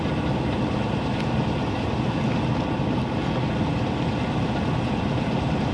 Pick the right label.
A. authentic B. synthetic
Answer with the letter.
A